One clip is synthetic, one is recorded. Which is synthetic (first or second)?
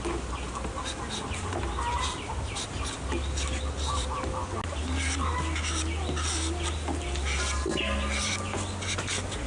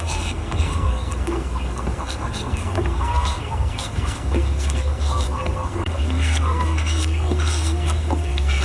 second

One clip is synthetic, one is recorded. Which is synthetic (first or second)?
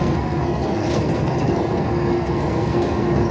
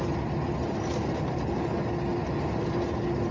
first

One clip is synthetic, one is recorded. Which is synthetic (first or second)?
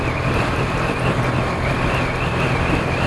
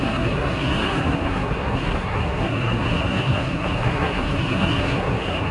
second